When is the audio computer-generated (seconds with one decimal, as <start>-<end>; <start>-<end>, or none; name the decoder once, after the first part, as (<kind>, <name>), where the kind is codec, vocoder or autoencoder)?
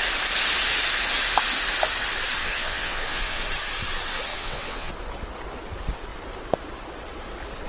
2.4-3.4 (vocoder, WaveNeXt); 4.3-4.9